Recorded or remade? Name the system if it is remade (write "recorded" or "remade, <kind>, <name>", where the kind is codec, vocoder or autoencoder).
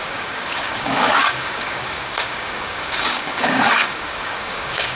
remade, codec, DAC